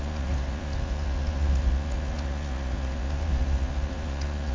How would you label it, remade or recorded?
remade